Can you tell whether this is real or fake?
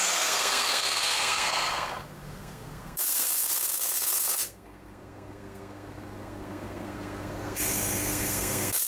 fake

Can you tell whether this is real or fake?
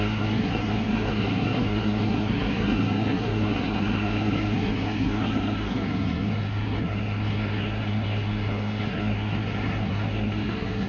fake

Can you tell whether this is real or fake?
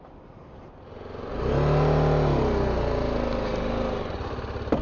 real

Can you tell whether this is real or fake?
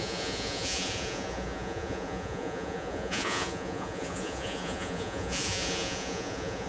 fake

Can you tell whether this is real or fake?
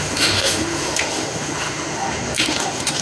fake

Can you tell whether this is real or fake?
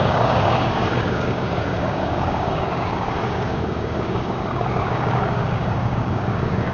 fake